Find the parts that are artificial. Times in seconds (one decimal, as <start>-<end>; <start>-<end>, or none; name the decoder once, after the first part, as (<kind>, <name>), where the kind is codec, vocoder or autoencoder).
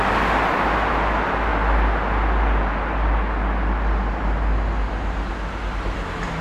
none